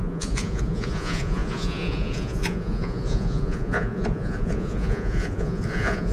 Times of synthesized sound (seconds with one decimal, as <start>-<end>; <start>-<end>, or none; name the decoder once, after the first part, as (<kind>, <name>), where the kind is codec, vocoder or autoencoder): 0.0-6.1 (vocoder, Vocos)